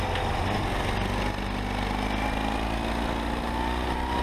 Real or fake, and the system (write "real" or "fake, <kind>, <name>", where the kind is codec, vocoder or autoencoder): real